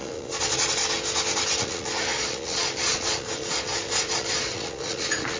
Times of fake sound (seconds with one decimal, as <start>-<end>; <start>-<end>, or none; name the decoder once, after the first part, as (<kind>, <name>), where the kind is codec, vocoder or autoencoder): 0.0-0.8 (vocoder, Vocos); 1.6-5.4